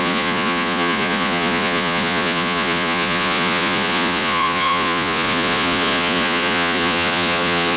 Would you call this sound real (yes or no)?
no